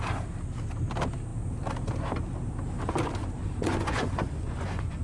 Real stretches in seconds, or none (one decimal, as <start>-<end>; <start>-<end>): 0.0-3.4